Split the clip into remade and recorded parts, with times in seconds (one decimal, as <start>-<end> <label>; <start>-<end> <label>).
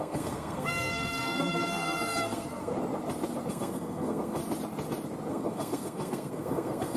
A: 0.0-2.7 remade; 2.7-3.5 recorded; 3.5-4.4 remade; 4.4-5.3 recorded; 5.3-7.0 remade